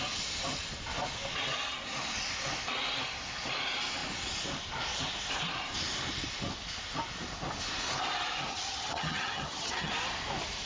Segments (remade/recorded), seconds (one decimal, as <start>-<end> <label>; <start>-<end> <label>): 0.0-8.5 recorded; 8.5-9.9 remade; 9.9-10.7 recorded